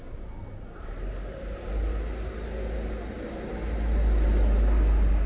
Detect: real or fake real